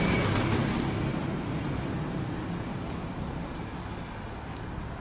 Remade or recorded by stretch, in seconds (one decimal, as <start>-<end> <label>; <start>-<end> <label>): 0.0-1.1 recorded; 1.1-2.1 remade; 2.1-5.0 recorded